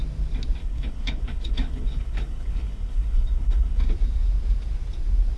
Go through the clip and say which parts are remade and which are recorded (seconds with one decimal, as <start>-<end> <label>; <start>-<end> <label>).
0.0-0.6 recorded; 0.6-3.8 remade; 3.8-5.4 recorded